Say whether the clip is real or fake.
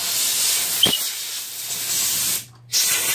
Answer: real